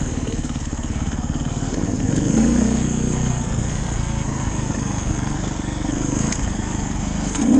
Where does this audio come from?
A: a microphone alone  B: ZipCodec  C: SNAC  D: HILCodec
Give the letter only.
C